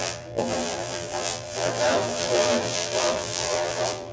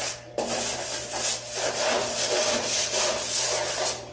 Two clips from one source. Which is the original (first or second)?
second